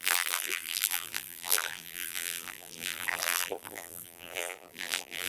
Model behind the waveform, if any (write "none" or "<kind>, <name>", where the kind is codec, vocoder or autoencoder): vocoder, BigVGAN v2